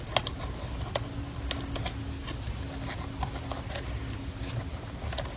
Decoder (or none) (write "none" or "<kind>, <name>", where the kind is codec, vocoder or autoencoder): none